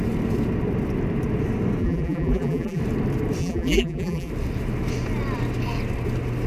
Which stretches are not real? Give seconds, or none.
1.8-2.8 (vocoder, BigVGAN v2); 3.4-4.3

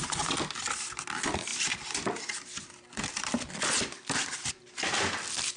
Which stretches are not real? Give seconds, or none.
1.5-4.5 (vocoder, BigVGAN v2)

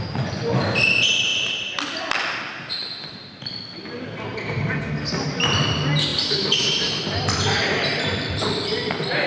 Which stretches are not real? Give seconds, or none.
6.1-7.0 (vocoder, BigVGAN v2)

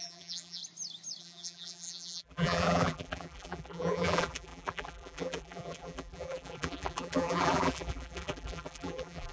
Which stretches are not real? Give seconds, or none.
0.0-0.6 (vocoder, BigVGAN v2); 1.2-9.3

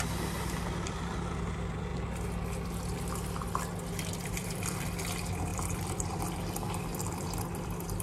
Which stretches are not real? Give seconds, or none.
0.0-1.9 (vocoder, BigVGAN v2); 4.0-8.0

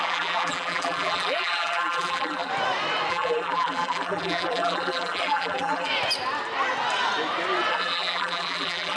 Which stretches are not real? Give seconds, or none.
0.0-2.5 (vocoder, BigVGAN v2); 3.1-5.9; 7.7-9.0

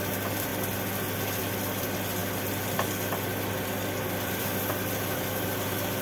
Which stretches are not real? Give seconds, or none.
0.0-0.5 (vocoder, BigVGAN v2); 1.4-2.2; 4.0-6.0

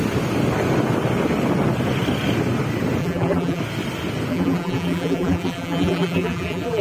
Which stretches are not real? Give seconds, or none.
3.0-3.6 (vocoder, BigVGAN v2); 4.3-6.8